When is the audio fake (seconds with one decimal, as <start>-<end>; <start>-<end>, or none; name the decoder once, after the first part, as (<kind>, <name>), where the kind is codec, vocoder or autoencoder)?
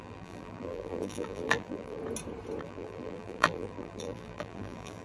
0.0-2.0 (vocoder, BigVGAN v2); 2.6-5.0